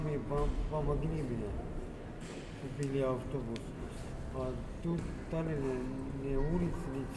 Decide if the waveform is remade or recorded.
recorded